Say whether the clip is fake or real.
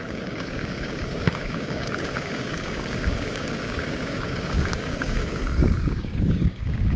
fake